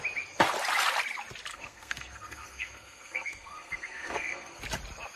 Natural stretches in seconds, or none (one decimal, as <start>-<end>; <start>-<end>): 0.0-1.5; 4.6-5.2